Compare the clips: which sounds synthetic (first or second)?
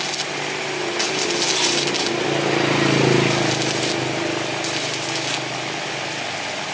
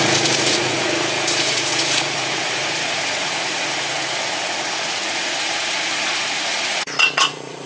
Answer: second